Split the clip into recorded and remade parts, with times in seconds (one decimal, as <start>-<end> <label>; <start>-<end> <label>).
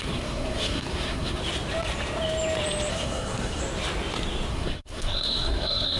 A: 0.0-1.4 remade; 1.4-2.9 recorded; 2.9-3.6 remade; 3.6-4.5 recorded; 4.5-6.0 remade